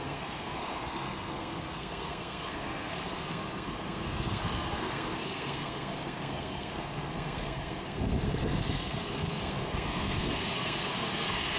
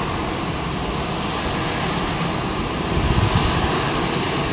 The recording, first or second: second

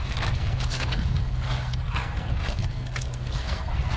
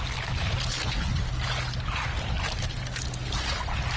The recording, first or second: second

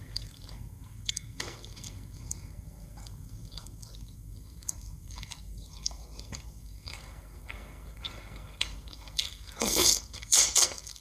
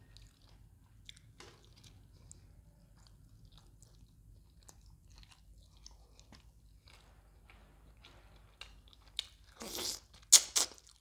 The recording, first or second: second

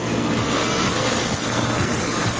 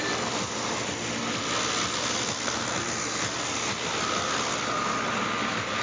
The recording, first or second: second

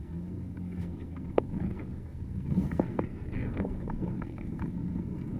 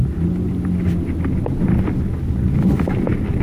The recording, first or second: second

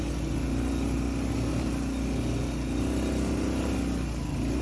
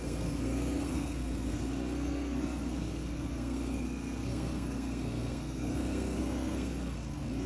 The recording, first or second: first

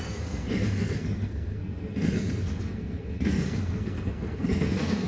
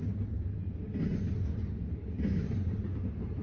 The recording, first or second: second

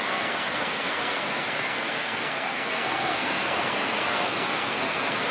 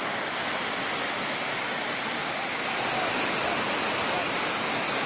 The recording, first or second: second